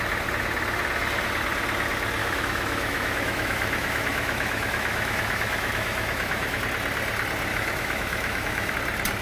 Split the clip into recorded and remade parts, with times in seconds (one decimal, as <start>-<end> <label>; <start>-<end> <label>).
0.0-2.2 recorded; 2.2-6.6 remade; 6.6-7.5 recorded; 7.5-8.7 remade; 8.7-9.2 recorded